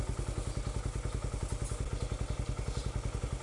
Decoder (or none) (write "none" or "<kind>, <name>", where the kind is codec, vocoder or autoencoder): none